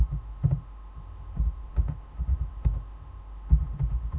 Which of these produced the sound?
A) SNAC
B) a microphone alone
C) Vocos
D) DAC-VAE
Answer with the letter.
D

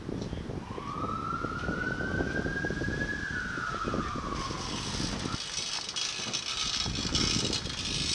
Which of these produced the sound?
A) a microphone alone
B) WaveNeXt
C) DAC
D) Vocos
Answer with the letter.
A